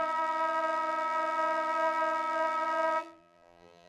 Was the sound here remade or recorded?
remade